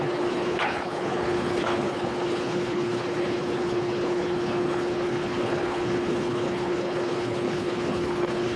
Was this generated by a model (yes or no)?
yes